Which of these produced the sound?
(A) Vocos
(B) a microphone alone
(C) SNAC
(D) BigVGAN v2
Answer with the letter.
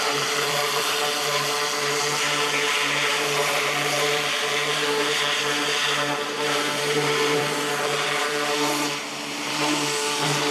D